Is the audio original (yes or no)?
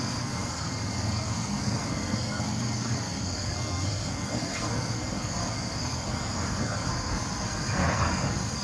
no